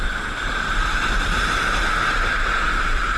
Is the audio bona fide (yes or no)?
yes